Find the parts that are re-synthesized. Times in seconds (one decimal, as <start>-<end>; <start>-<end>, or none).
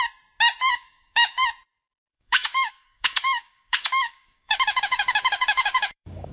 0.7-1.4; 2.1-6.3